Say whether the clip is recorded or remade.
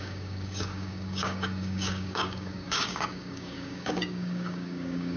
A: remade